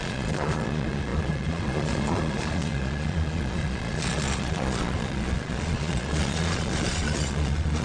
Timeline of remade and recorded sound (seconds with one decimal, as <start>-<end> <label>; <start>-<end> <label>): 0.0-7.8 remade

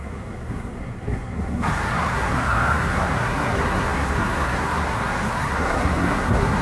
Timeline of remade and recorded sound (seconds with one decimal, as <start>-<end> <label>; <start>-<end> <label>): 0.0-6.6 remade

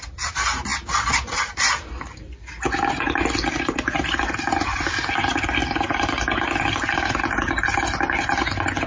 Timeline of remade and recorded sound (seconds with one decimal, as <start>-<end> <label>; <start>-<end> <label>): 0.0-8.9 recorded

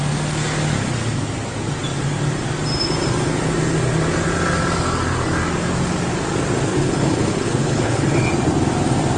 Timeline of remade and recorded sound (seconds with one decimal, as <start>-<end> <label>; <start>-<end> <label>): 0.0-6.7 recorded; 6.7-8.3 remade; 8.3-9.2 recorded

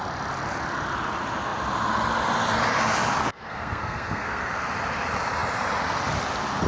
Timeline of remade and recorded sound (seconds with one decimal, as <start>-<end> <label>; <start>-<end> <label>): 0.0-3.2 recorded; 3.2-4.7 remade; 4.7-6.7 recorded

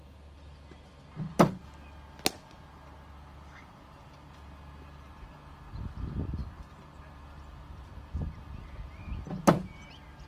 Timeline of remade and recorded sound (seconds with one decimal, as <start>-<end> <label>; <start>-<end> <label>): 0.0-6.4 recorded; 6.4-7.1 remade; 7.1-7.5 recorded; 7.5-8.1 remade; 8.1-10.3 recorded